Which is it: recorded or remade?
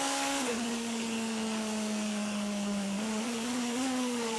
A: remade